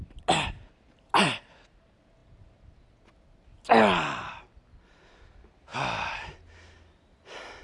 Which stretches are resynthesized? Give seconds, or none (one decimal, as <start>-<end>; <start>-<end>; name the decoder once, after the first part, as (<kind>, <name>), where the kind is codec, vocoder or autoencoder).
none